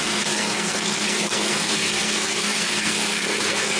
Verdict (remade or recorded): remade